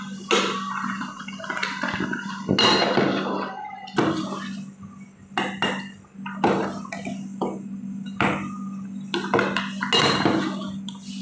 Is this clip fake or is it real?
real